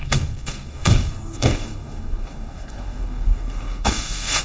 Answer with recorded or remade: remade